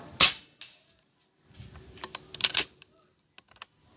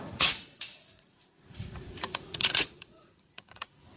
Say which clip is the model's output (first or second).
second